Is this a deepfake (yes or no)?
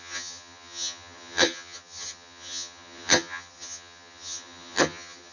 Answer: yes